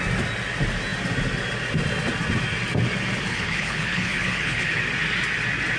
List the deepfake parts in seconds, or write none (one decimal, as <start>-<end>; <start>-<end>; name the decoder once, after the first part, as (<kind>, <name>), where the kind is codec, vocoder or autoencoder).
3.3-4.7 (codec, HILCodec)